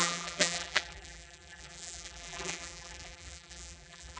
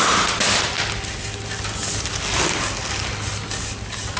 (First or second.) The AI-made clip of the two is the first